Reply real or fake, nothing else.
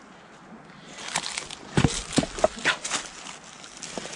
real